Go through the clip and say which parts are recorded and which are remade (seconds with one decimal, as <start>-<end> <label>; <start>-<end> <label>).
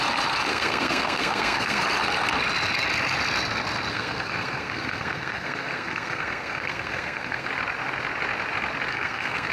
0.0-0.5 recorded; 0.5-1.8 remade; 1.8-3.9 recorded; 3.9-7.5 remade; 7.5-8.9 recorded; 8.9-9.5 remade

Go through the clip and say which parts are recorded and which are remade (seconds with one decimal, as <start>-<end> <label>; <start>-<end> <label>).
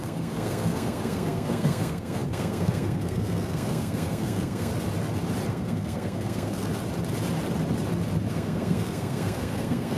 0.0-4.7 remade; 4.7-5.5 recorded; 5.5-6.7 remade; 6.7-8.3 recorded; 8.3-10.0 remade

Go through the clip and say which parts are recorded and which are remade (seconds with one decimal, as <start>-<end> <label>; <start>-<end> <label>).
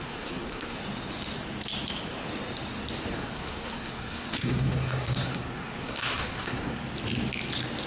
0.0-0.8 remade; 0.8-3.1 recorded; 3.1-6.8 remade; 6.8-7.9 recorded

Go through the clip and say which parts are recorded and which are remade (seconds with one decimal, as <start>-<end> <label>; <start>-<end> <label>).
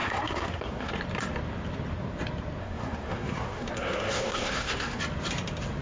0.0-0.9 remade; 0.9-2.6 recorded; 2.6-5.0 remade; 5.0-5.8 recorded